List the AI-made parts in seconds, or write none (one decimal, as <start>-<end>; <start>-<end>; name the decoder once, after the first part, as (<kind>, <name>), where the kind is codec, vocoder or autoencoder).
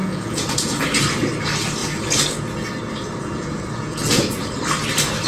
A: 0.0-1.0 (vocoder, Vocos); 1.8-2.7; 3.2-4.5